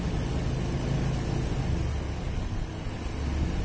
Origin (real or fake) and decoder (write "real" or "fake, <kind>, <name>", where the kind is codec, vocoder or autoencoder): real